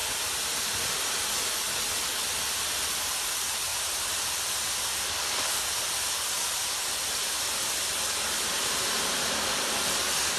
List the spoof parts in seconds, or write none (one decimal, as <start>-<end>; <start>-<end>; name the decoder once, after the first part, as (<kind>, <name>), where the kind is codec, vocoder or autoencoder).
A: 3.7-7.9 (vocoder, BigVGAN v2)